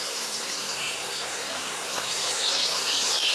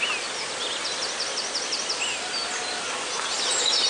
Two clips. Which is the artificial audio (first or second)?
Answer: first